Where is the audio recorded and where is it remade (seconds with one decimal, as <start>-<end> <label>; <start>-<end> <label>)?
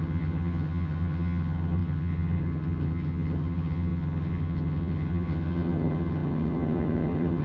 0.0-7.4 remade